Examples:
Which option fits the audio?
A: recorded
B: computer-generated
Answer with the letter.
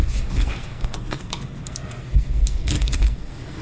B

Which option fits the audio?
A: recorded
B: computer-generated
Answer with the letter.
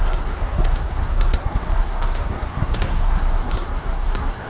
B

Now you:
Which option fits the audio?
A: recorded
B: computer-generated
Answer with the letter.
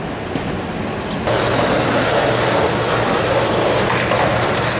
A